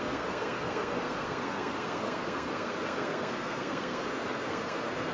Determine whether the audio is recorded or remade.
remade